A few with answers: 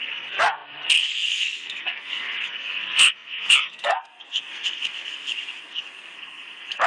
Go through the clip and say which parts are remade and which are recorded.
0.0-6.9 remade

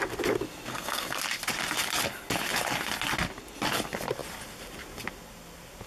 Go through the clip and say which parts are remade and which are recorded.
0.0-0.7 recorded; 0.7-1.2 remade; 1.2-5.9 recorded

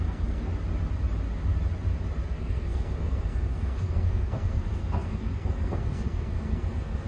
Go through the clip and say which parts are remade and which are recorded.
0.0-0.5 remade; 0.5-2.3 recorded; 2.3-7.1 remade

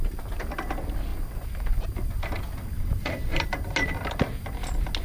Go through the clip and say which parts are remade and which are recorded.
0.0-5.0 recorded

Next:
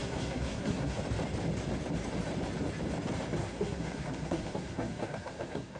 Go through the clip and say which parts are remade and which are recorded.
0.0-1.0 remade; 1.0-3.4 recorded; 3.4-5.8 remade

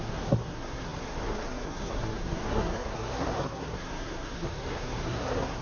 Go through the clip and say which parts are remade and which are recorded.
0.0-5.6 remade

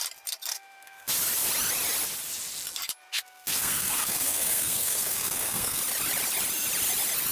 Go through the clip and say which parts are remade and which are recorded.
0.0-0.5 recorded; 0.5-1.1 remade; 1.1-3.1 recorded; 3.1-5.8 remade; 5.8-7.3 recorded